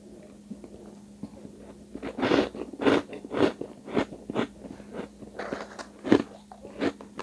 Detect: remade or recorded recorded